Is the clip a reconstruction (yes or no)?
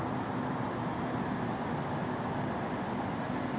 no